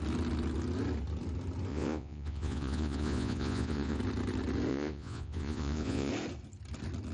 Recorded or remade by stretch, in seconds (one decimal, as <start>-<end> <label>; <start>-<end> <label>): 0.0-1.7 recorded; 1.7-4.0 remade; 4.0-4.7 recorded; 4.7-6.1 remade; 6.1-7.1 recorded